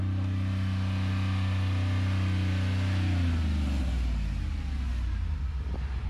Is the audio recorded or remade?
recorded